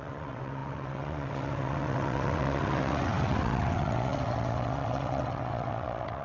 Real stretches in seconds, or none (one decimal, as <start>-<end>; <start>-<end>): none